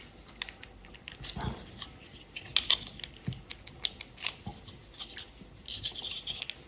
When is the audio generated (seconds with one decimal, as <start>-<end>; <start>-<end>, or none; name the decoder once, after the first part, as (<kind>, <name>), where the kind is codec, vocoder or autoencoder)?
0.8-2.4 (vocoder, BigVGAN v2); 3.5-5.4